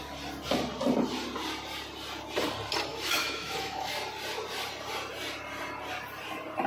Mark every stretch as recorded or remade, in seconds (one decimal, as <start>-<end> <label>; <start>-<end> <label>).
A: 0.0-2.9 recorded; 2.9-3.9 remade; 3.9-6.7 recorded